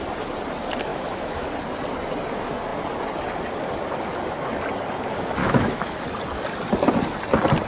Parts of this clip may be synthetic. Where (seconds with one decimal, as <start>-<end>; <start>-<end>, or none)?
0.9-1.4; 5.4-6.0